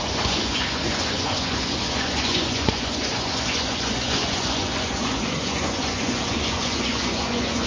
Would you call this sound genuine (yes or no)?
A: no